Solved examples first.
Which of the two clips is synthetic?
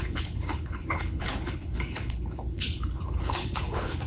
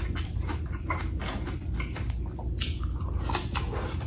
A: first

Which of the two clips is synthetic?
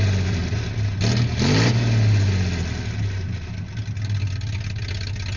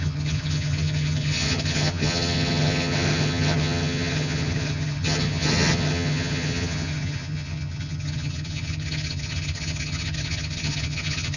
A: second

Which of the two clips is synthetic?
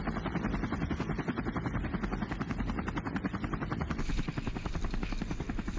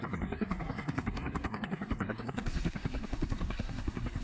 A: second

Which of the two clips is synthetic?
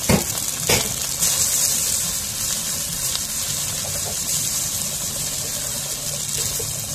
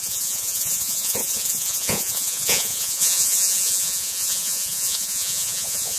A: second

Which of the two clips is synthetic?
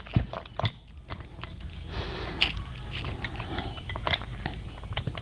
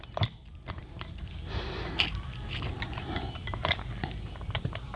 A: second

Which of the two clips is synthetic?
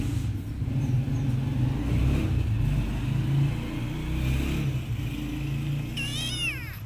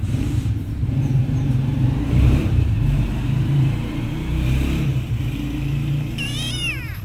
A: second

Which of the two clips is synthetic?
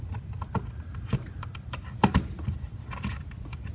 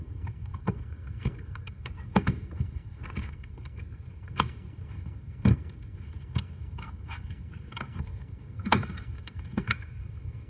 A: second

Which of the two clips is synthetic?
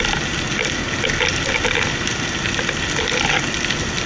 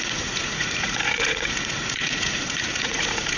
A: second